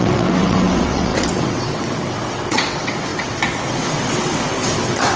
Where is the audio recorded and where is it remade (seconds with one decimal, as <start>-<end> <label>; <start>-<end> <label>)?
0.0-5.2 remade